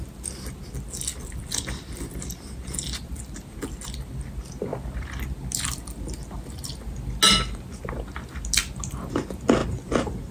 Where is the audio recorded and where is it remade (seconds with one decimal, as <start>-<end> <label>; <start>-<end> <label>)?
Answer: 0.0-1.1 recorded; 1.1-3.5 remade; 3.5-10.3 recorded